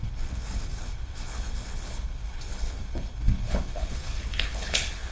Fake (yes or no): yes